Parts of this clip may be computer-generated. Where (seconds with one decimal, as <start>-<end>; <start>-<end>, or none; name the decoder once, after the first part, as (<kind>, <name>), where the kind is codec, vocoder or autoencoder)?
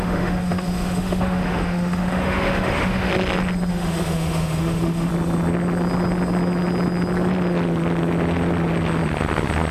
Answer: 0.0-3.1 (autoencoder, DAC-VAE); 3.7-5.1